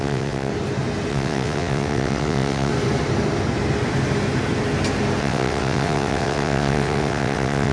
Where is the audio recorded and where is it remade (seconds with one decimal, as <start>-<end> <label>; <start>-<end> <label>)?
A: 0.0-0.5 remade; 0.5-1.1 recorded; 1.1-2.7 remade; 2.7-5.2 recorded; 5.2-7.7 remade